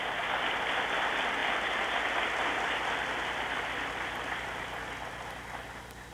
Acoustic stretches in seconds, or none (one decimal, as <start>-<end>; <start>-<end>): 0.0-6.1